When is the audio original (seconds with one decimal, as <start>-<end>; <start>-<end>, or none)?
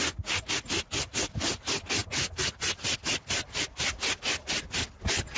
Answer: 0.0-5.4